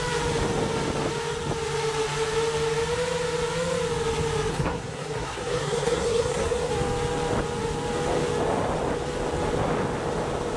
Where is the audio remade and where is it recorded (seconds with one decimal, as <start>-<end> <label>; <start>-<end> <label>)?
0.0-4.5 recorded; 4.5-6.7 remade; 6.7-10.6 recorded